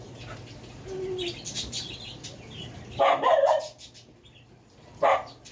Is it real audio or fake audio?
real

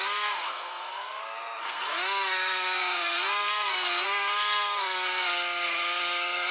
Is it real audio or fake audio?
fake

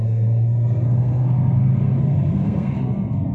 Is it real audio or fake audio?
fake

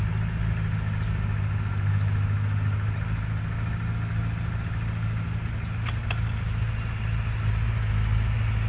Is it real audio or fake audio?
real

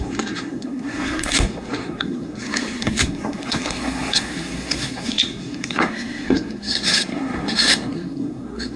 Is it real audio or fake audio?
fake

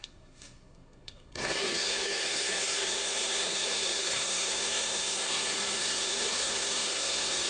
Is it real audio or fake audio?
fake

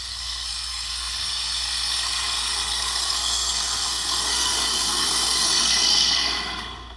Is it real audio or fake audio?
fake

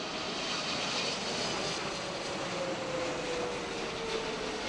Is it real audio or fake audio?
real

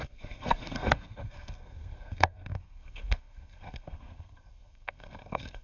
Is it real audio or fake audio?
fake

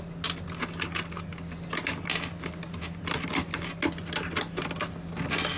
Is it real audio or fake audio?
real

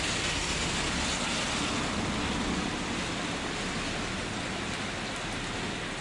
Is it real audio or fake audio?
real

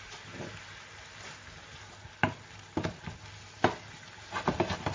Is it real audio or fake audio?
real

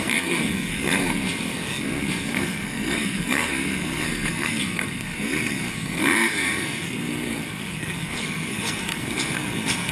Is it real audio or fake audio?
fake